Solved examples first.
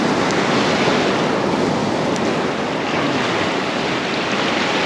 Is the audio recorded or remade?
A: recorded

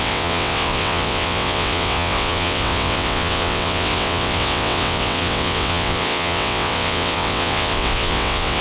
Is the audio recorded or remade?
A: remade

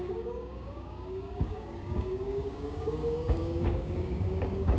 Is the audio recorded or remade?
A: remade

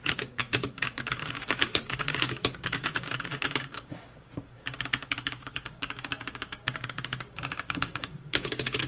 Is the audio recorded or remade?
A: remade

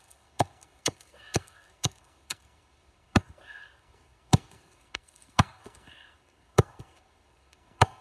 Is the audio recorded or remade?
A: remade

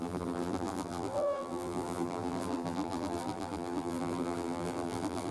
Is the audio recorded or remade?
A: remade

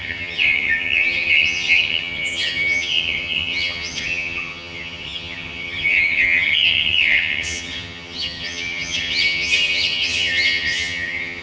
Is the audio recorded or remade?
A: remade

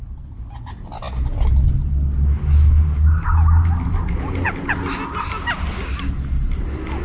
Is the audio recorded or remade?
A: recorded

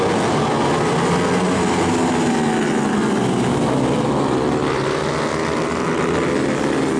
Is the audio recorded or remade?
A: recorded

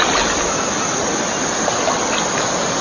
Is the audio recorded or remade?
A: recorded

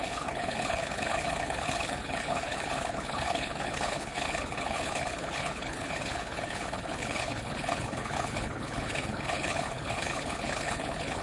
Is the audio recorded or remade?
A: remade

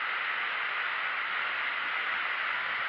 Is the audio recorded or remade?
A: recorded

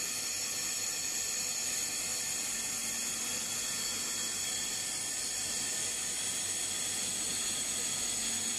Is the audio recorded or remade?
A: recorded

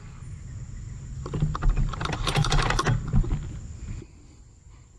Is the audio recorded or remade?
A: recorded